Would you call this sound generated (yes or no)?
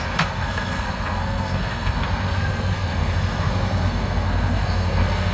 yes